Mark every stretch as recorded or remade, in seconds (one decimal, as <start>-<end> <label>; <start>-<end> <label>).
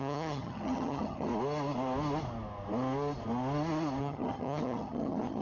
0.0-1.3 remade; 1.3-4.0 recorded; 4.0-5.4 remade